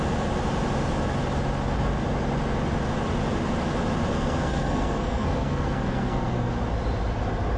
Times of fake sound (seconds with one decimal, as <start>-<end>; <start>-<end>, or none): 4.1-6.5